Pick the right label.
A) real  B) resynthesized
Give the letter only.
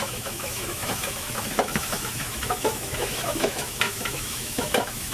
B